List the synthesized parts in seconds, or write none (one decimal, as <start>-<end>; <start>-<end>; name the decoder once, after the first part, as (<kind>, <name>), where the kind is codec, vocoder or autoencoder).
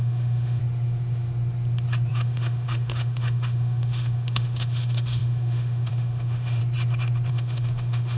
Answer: 0.0-0.6 (autoencoder, DAC-VAE); 2.1-6.6; 7.3-8.2